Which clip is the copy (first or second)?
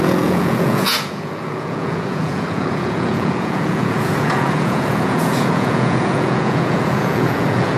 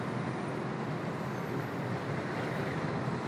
first